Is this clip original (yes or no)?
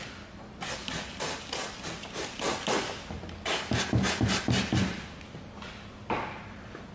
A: yes